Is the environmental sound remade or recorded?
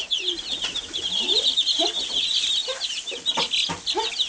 recorded